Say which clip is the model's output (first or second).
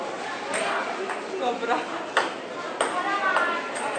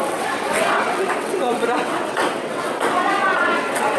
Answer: second